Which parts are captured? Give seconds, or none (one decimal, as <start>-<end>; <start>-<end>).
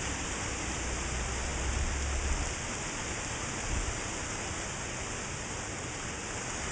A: 0.0-6.7